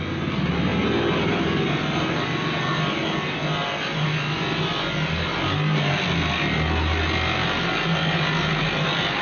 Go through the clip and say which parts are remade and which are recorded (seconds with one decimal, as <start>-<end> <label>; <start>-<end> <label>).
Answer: 0.0-9.2 recorded

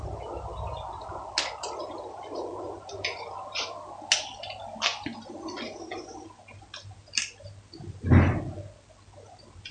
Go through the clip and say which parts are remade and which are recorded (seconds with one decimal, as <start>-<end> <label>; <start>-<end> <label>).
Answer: 0.0-9.7 recorded

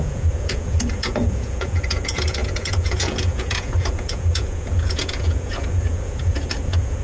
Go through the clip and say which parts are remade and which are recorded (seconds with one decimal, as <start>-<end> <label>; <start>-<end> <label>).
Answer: 0.0-7.0 remade

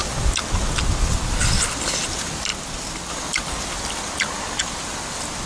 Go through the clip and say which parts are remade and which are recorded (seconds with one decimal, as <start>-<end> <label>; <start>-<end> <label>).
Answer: 0.0-5.5 recorded